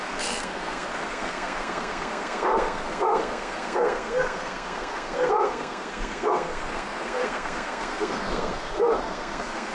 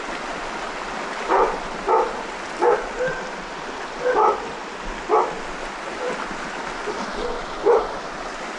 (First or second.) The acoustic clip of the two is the second